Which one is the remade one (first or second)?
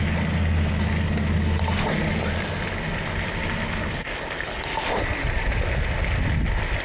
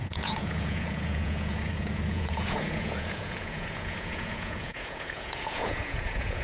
second